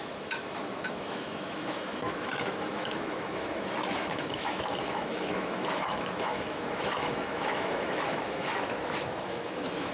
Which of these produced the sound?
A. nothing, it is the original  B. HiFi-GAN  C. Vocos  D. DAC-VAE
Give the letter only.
D